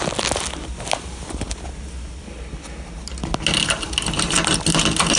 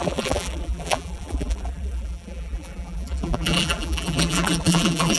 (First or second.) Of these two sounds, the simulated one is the second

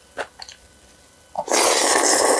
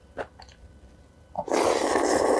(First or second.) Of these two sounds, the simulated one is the second